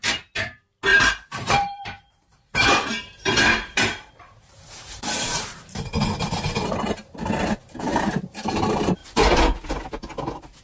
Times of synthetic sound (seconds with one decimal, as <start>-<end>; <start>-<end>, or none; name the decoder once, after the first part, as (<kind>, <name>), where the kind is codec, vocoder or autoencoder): 0.9-5.7 (vocoder, BigVGAN v2); 7.9-8.6; 9.0-9.8